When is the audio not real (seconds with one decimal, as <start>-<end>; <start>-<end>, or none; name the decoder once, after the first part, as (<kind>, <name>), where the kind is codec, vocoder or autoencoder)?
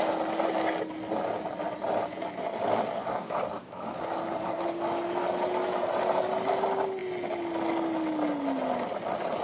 3.0-4.5 (codec, DAC)